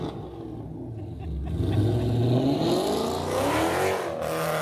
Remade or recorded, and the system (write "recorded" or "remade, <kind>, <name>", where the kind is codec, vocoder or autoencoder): recorded